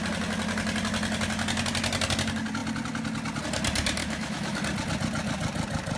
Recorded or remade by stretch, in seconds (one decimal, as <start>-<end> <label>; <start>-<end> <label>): 0.0-4.0 recorded; 4.0-4.6 remade; 4.6-6.0 recorded